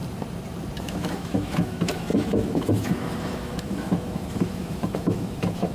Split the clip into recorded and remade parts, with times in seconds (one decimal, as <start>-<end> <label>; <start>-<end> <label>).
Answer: 0.0-0.8 recorded; 0.8-5.7 remade